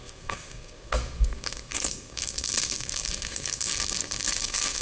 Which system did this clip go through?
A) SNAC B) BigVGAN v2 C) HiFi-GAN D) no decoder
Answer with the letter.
A